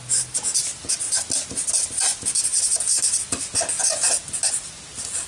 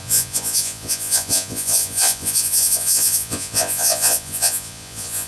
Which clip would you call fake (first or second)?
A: second